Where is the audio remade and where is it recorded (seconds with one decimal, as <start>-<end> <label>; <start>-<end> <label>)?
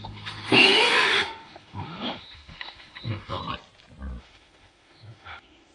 0.0-3.4 remade; 3.4-4.2 recorded; 4.2-5.7 remade